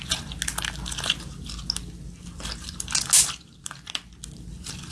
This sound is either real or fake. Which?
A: real